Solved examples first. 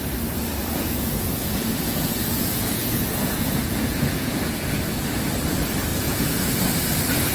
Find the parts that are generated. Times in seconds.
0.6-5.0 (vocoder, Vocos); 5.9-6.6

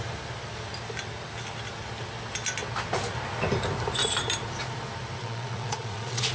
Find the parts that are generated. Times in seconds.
5.2-6.3 (vocoder, Vocos)

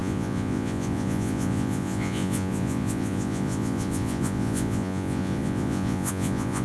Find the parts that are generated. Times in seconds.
0.0-6.6 (vocoder, Vocos)

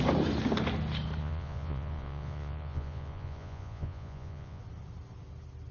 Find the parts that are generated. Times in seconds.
1.2-4.6 (vocoder, Vocos)

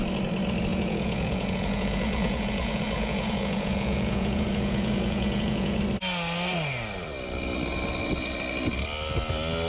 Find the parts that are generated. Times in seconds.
0.7-5.8 (vocoder, Vocos)